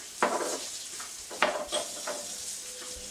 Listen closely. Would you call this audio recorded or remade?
recorded